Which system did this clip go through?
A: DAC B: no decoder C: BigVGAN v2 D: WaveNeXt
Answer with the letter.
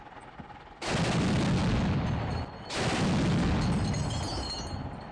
B